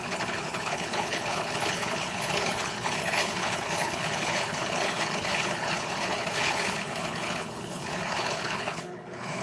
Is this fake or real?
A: fake